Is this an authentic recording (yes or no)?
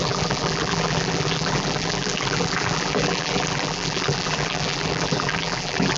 no